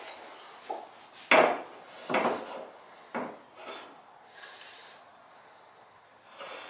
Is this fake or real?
real